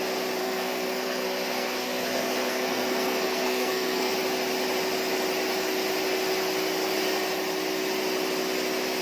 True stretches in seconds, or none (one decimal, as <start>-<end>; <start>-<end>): 0.0-0.4; 4.1-9.0